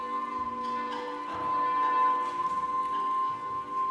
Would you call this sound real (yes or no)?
yes